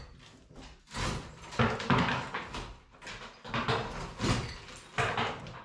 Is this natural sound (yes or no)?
yes